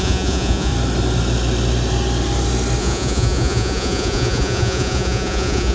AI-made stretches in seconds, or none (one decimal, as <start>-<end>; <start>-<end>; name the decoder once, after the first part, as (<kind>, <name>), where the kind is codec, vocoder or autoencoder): 0.0-0.7 (vocoder, Vocos); 2.8-5.7